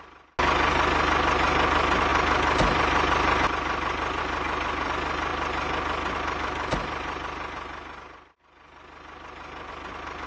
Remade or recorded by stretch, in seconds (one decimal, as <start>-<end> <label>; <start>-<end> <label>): 0.0-10.3 recorded